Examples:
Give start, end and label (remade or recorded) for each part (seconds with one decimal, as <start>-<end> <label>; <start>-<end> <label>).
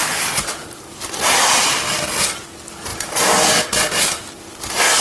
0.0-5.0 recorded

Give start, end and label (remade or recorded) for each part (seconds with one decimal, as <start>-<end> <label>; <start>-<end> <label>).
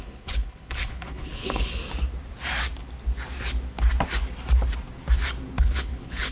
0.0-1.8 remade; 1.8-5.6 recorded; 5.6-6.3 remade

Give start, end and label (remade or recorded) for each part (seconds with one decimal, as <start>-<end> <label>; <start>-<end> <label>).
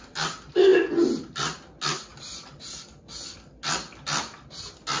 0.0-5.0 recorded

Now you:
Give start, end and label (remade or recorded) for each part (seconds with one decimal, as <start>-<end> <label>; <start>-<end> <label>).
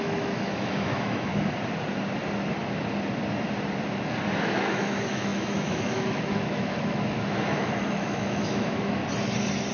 0.0-1.3 remade; 1.3-4.4 recorded; 4.4-9.0 remade; 9.0-9.7 recorded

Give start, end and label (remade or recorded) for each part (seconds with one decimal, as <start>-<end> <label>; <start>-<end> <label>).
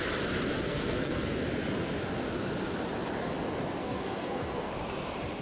0.0-0.7 recorded; 0.7-1.3 remade; 1.3-3.8 recorded; 3.8-4.7 remade; 4.7-5.4 recorded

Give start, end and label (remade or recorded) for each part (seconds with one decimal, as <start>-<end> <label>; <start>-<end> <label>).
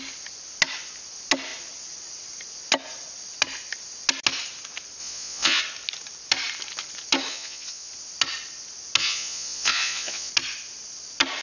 0.0-5.0 recorded; 5.0-5.6 remade; 5.6-7.3 recorded; 7.3-7.9 remade; 7.9-9.0 recorded; 9.0-10.3 remade; 10.3-11.4 recorded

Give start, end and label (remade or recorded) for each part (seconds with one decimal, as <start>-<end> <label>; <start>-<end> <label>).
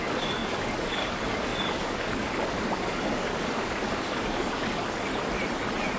0.0-5.1 remade; 5.1-6.0 recorded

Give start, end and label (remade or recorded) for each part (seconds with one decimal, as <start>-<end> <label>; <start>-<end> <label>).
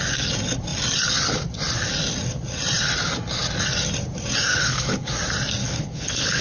0.0-4.5 recorded; 4.5-5.1 remade; 5.1-5.6 recorded; 5.6-6.4 remade